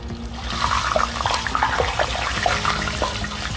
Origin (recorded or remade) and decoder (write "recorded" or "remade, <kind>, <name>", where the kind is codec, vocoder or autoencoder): recorded